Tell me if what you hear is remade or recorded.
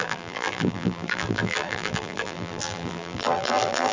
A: remade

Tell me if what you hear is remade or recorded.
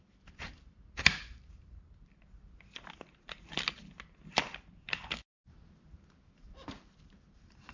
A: remade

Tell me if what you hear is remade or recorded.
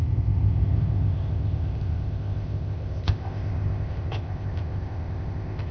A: remade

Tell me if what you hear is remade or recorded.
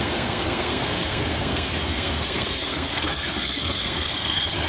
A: remade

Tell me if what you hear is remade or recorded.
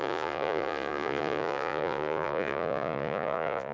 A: remade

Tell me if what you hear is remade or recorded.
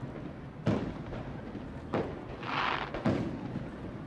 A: recorded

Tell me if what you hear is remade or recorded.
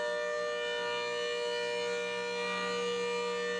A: recorded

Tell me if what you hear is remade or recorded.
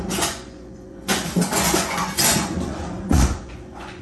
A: remade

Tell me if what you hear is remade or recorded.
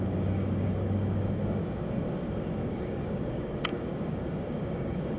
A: remade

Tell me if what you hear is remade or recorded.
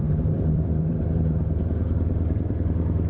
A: remade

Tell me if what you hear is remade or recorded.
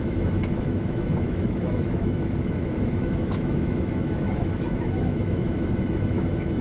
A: remade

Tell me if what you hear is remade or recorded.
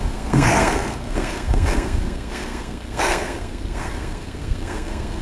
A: remade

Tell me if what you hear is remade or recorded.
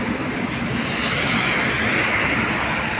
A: remade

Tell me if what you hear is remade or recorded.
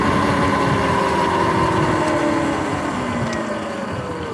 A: recorded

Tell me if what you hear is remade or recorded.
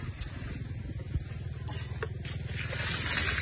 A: recorded